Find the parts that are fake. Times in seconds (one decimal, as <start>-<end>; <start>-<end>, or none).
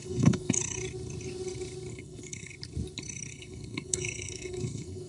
0.0-0.6; 1.9-2.5; 3.3-5.1